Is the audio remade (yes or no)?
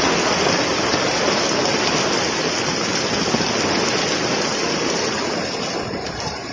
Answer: no